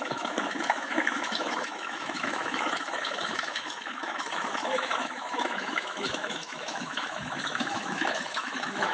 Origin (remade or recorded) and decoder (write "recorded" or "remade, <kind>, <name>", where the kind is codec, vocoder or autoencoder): remade, autoencoder, DAC-VAE